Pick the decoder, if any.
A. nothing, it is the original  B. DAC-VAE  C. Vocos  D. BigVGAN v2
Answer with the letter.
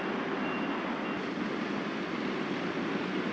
A